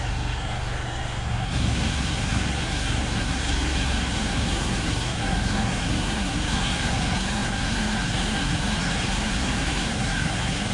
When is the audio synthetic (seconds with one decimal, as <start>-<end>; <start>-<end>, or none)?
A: 0.0-10.7